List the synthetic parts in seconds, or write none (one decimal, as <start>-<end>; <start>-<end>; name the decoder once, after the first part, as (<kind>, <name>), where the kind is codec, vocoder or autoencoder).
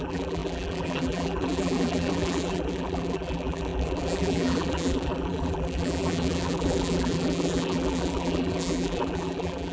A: 0.0-9.7 (vocoder, BigVGAN v2)